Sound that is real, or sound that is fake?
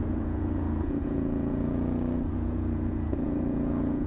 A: fake